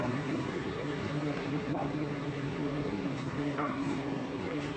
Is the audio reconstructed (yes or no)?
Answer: yes